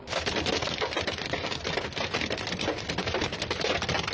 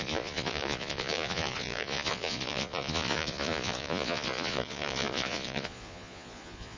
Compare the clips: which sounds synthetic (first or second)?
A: second